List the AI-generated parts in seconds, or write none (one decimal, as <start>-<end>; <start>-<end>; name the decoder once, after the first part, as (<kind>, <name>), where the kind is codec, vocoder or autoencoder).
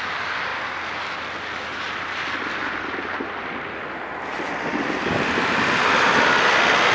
none